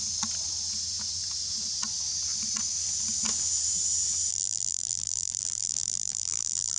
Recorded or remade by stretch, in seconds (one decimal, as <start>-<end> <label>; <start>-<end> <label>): 0.0-4.3 recorded; 4.3-6.8 remade

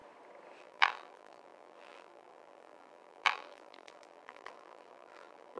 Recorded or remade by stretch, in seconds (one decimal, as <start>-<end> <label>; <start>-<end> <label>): 0.0-0.6 recorded; 0.6-5.6 remade

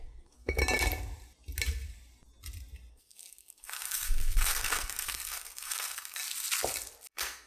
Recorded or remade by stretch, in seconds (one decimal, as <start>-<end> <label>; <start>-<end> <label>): 0.0-0.6 remade; 0.6-2.9 recorded; 2.9-6.2 remade; 6.2-7.1 recorded; 7.1-7.5 remade

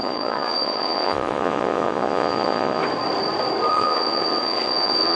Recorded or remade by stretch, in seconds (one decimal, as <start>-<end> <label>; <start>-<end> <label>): 0.0-2.8 remade; 2.8-3.7 recorded; 3.7-5.2 remade

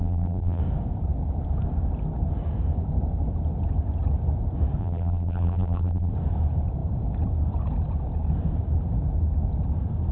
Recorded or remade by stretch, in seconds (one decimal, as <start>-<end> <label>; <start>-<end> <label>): 0.0-0.6 remade; 0.6-4.8 recorded; 4.8-6.1 remade; 6.1-10.1 recorded

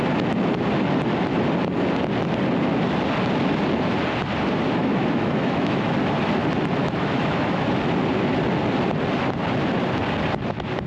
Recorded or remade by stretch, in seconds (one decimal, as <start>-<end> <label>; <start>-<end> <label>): 0.0-4.8 recorded; 4.8-5.9 remade; 5.9-6.8 recorded; 6.8-7.7 remade; 7.7-10.9 recorded

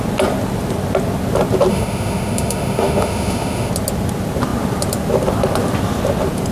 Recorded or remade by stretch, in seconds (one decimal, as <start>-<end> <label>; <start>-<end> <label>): 0.0-1.7 recorded; 1.7-3.7 remade; 3.7-6.5 recorded

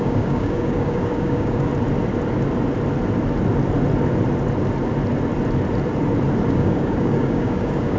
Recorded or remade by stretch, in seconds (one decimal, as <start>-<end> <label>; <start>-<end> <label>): 0.0-1.7 remade; 1.7-6.5 recorded; 6.5-8.0 remade